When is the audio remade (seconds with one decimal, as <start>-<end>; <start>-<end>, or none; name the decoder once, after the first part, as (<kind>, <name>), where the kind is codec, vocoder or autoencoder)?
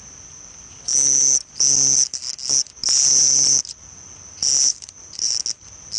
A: 4.7-5.3 (vocoder, BigVGAN v2)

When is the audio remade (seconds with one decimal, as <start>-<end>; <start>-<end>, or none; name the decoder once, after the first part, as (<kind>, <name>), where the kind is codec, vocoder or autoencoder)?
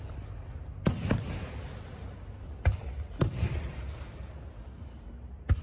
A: none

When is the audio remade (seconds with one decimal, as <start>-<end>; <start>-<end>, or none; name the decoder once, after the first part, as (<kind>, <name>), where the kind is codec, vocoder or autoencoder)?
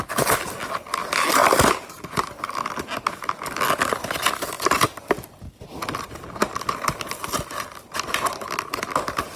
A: none